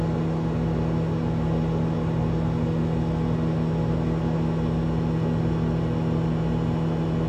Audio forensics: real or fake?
real